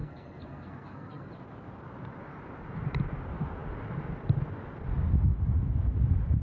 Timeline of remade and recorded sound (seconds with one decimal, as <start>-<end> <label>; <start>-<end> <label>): 0.0-1.3 remade; 1.3-6.4 recorded